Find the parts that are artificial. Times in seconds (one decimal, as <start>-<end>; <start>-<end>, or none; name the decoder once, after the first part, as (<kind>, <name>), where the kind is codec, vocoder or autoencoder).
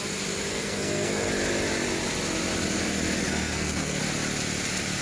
0.5-1.3 (codec, SNAC); 3.2-4.0